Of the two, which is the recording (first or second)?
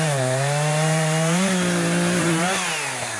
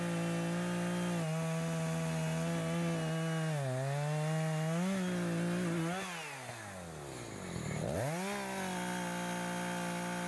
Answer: second